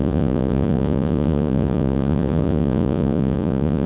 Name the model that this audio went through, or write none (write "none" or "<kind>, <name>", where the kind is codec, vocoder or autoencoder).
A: vocoder, Vocos